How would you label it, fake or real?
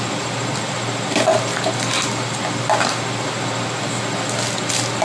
real